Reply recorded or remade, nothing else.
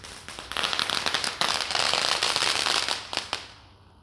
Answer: recorded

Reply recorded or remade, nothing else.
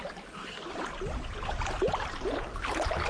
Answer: recorded